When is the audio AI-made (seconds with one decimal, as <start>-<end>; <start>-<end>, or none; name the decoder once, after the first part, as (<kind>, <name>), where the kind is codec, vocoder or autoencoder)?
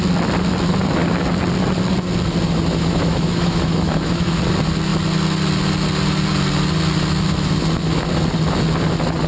2.8-4.4 (autoencoder, DAC-VAE)